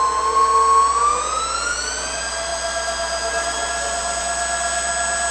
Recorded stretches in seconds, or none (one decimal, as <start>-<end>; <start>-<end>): 0.0-5.3